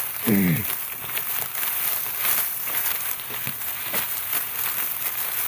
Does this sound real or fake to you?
fake